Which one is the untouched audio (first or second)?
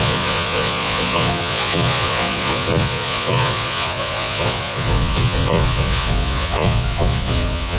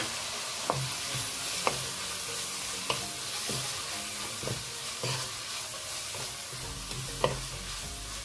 second